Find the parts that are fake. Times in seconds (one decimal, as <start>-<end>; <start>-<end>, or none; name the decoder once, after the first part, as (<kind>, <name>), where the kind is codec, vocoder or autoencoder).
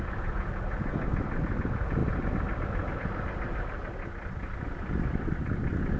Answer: none